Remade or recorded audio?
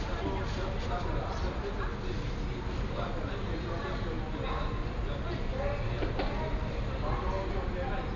recorded